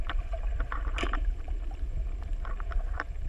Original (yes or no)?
no